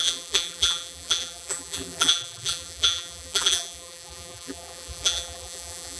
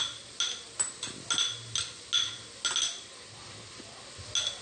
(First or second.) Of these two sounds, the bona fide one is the second